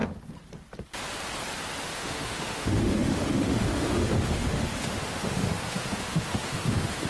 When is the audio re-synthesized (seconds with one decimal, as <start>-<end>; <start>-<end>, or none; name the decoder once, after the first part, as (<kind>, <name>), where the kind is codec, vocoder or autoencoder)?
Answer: 1.8-7.1 (autoencoder, DAC-VAE)